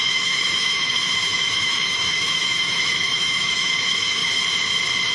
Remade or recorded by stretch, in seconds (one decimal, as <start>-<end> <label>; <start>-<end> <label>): 0.0-4.2 remade; 4.2-5.1 recorded